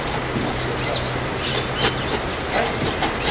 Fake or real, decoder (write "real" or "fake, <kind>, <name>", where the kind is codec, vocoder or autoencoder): real